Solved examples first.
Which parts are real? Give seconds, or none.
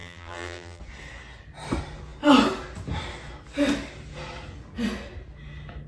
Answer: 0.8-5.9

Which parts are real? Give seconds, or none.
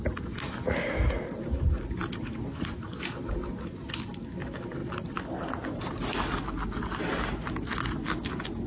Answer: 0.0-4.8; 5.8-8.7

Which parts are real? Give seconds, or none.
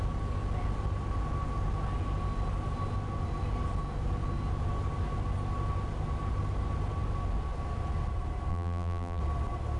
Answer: 0.0-8.5; 9.2-9.8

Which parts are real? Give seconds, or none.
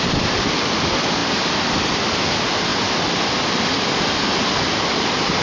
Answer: 0.0-5.4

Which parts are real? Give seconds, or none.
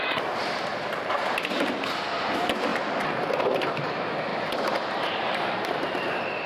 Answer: 0.0-0.7; 1.3-2.7; 3.3-4.3